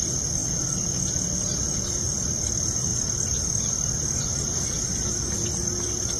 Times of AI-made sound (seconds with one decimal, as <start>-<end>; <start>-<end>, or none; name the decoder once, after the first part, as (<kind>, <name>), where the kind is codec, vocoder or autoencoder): none

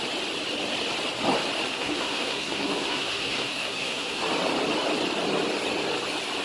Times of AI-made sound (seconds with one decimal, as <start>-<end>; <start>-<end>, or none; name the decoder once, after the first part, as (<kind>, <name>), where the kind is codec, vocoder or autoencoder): 1.7-4.2 (codec, SNAC)

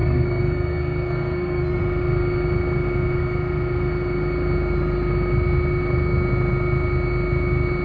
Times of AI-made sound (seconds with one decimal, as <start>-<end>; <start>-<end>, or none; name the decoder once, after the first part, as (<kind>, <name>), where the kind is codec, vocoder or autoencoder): 0.0-1.8 (codec, SNAC)

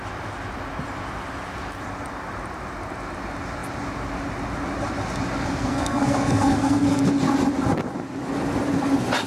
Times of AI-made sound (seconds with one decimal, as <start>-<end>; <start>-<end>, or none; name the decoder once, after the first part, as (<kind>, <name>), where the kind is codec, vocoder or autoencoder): 5.4-7.1 (codec, SNAC)

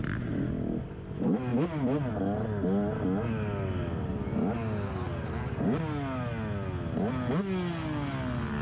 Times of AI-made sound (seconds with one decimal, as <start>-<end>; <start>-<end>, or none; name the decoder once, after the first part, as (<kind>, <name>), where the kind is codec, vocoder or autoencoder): none

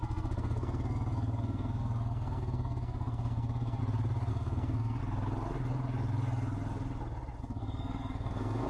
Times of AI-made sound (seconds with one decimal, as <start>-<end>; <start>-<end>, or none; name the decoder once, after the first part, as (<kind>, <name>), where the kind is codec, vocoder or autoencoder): 0.0-3.8 (codec, SNAC); 4.3-5.0; 7.4-8.7

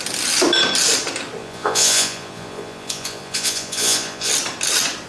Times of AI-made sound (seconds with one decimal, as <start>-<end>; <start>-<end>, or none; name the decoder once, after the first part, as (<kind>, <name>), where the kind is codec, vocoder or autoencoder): 1.4-4.3 (vocoder, Vocos)